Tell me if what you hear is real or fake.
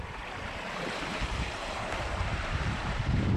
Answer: fake